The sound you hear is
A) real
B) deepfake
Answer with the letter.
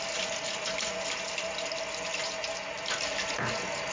A